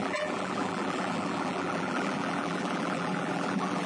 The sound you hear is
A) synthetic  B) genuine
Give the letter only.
A